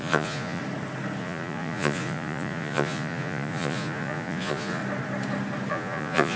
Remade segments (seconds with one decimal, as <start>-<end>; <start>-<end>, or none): 0.0-0.6; 1.2-4.8; 5.7-6.4